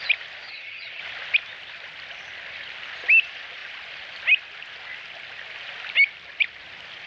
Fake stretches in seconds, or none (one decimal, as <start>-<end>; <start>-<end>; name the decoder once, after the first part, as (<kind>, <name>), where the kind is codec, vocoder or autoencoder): 0.5-1.0 (vocoder, HiFi-GAN)